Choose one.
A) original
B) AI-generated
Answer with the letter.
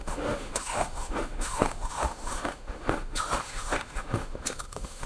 B